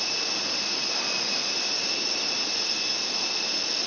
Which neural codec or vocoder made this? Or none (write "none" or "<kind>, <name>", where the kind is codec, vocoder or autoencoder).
none